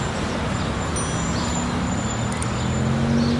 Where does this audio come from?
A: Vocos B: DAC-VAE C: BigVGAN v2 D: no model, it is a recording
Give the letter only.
D